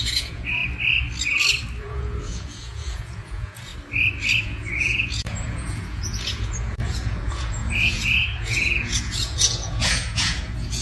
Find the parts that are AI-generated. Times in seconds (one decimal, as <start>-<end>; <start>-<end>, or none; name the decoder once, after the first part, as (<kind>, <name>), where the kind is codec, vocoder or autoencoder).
0.0-0.6 (vocoder, Vocos); 1.8-3.7; 4.4-10.8